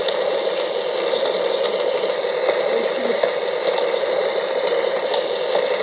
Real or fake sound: real